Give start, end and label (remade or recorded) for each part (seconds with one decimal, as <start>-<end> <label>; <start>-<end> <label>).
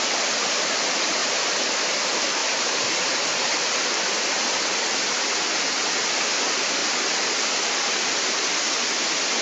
0.0-1.2 recorded; 1.2-1.8 remade; 1.8-2.4 recorded; 2.4-3.8 remade; 3.8-9.4 recorded